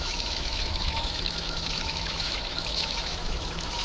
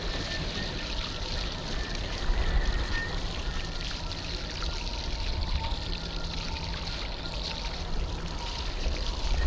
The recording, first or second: second